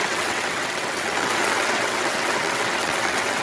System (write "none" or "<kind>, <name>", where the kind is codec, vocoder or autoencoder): vocoder, WaveNeXt